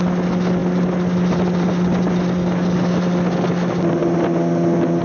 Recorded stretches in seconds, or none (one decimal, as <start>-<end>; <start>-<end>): 0.0-5.0